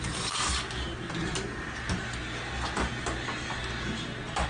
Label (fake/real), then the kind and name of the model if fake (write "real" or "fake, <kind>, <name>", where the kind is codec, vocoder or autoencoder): real